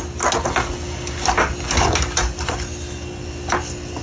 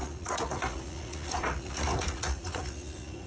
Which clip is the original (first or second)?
first